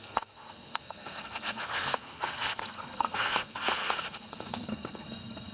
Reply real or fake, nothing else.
fake